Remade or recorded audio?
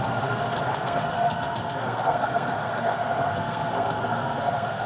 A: remade